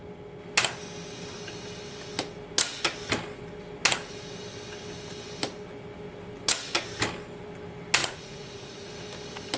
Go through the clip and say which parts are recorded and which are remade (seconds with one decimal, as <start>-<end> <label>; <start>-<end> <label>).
0.0-8.0 recorded; 8.0-8.9 remade; 8.9-9.6 recorded

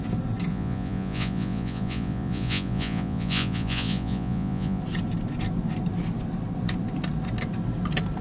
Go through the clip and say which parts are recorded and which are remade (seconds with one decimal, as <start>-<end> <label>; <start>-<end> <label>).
0.0-0.5 recorded; 0.5-4.8 remade; 4.8-8.2 recorded